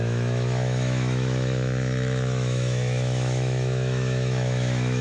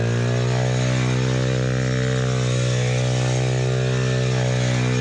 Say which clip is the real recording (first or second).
second